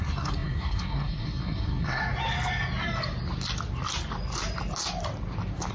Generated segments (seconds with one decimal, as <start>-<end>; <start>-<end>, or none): 0.0-2.0